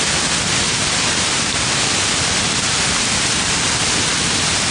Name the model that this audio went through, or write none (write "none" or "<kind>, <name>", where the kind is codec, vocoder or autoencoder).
none